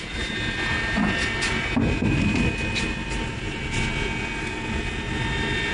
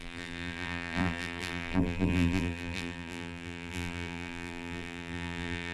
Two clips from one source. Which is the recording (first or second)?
first